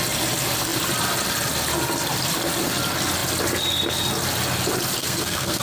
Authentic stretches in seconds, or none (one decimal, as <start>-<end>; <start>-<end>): 0.0-5.0